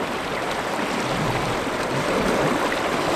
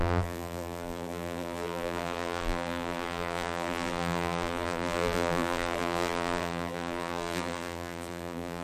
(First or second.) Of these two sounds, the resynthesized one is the second